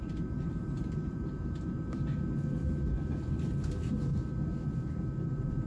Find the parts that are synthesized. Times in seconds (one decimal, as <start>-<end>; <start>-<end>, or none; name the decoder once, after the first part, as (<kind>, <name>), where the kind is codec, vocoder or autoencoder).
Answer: 0.0-2.1 (vocoder, BigVGAN v2)